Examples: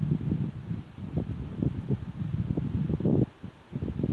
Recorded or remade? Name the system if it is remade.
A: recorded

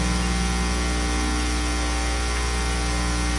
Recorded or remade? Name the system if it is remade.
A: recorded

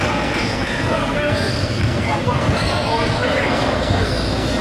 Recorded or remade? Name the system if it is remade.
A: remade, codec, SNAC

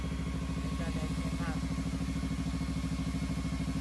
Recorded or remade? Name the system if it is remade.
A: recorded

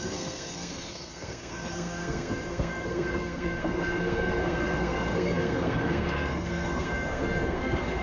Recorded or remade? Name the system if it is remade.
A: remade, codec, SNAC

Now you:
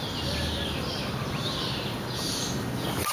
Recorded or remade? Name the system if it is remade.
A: recorded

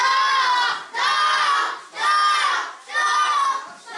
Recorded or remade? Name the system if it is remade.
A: recorded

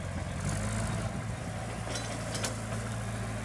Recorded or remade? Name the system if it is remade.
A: recorded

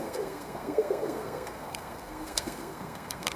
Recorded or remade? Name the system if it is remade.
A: remade, codec, SNAC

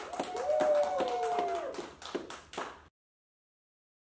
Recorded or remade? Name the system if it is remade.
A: recorded